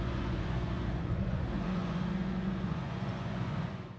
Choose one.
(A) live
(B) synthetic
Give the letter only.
B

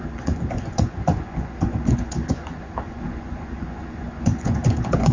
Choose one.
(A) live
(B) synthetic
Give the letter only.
B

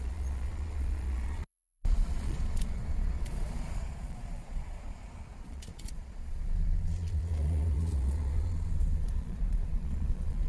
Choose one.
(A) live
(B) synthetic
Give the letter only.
B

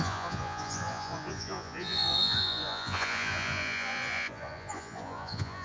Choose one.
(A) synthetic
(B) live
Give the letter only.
A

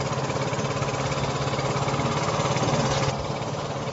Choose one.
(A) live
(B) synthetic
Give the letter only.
A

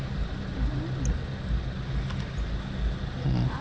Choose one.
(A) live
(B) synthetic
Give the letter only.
A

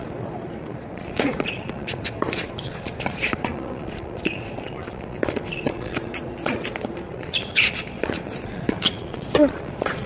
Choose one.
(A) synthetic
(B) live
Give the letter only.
A